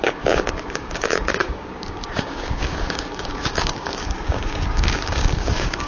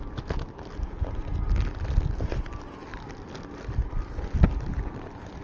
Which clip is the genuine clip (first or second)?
second